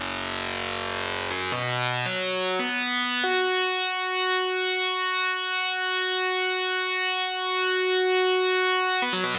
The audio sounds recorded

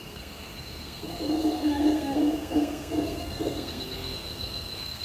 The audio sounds remade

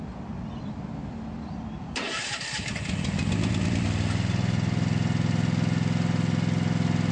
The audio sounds recorded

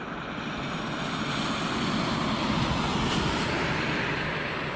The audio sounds recorded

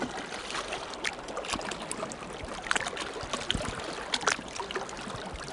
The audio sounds recorded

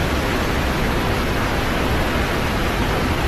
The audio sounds recorded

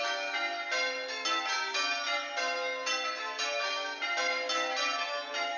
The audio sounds recorded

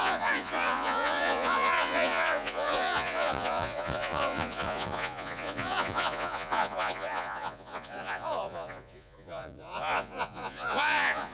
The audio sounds remade